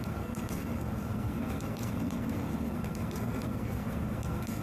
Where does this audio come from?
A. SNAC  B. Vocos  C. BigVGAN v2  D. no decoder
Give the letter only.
A